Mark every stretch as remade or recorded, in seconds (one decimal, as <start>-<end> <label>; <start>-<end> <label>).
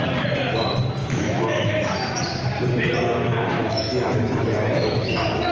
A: 0.0-1.0 recorded; 1.0-2.2 remade; 2.2-3.3 recorded; 3.3-5.5 remade